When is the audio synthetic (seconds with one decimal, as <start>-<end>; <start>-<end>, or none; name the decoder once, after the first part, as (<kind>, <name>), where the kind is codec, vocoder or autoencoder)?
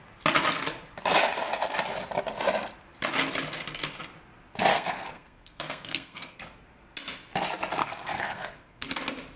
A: 4.7-6.4 (codec, SNAC); 7.8-8.9